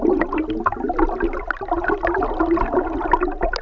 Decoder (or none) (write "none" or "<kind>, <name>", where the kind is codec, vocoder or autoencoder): none